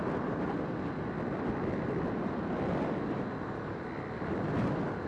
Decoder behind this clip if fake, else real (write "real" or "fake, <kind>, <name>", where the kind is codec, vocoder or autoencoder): real